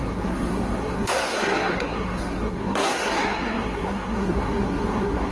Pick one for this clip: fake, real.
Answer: fake